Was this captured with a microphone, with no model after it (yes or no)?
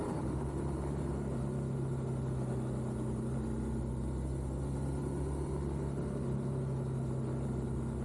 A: yes